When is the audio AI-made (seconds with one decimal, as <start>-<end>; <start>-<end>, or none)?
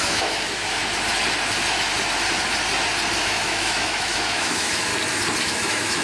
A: 0.0-0.8; 3.2-4.9; 5.4-6.0